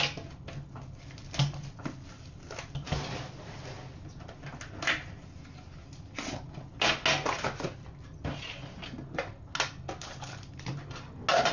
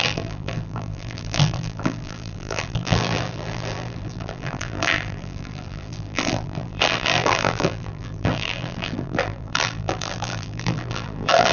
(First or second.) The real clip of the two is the first